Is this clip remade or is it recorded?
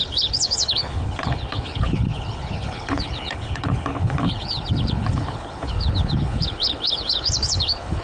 remade